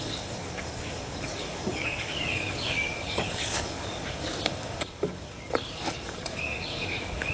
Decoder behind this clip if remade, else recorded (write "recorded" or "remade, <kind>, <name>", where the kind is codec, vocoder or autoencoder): remade, codec, DAC